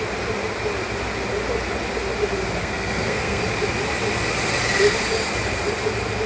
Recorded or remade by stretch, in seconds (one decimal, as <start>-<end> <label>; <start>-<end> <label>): 0.0-2.6 recorded; 2.6-3.4 remade; 3.4-6.3 recorded